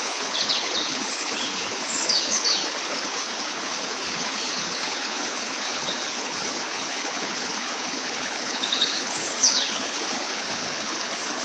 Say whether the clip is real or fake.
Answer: fake